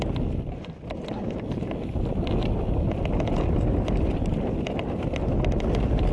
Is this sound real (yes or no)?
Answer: yes